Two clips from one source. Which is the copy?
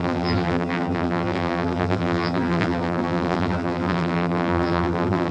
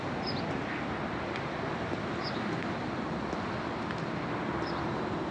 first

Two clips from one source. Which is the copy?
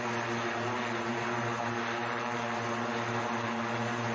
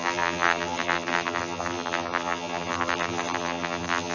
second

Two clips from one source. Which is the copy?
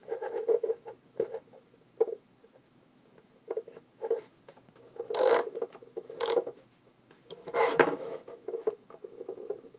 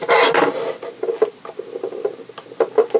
first